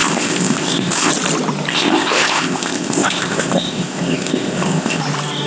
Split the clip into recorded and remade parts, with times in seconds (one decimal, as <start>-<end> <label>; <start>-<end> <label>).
0.0-1.1 remade; 1.1-1.7 recorded; 1.7-5.0 remade; 5.0-5.5 recorded